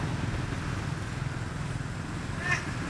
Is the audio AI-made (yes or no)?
no